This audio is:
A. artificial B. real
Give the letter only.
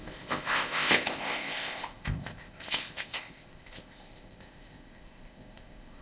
A